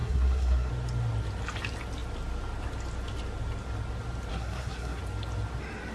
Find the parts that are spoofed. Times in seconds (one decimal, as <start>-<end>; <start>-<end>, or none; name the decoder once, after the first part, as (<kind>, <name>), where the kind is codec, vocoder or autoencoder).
0.0-0.7 (codec, SNAC); 4.3-5.0